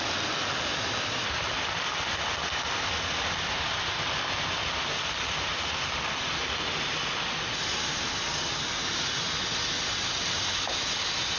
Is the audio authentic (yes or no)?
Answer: yes